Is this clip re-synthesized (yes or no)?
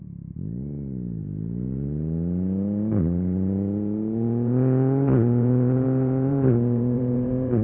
yes